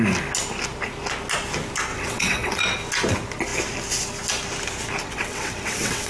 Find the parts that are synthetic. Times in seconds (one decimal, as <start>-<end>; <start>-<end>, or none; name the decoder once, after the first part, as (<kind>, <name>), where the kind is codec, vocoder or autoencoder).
1.9-2.6 (vocoder, WaveNeXt); 5.0-6.1